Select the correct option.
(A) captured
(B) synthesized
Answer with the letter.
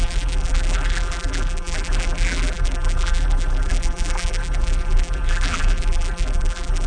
B